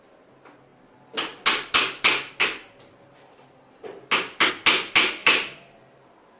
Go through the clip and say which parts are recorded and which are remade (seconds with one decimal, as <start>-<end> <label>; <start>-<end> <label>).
0.0-5.2 recorded; 5.2-6.4 remade